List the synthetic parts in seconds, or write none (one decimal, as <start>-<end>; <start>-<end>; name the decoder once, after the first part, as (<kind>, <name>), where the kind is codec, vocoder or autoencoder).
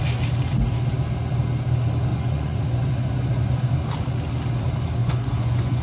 2.1-3.7 (vocoder, Vocos); 5.0-5.8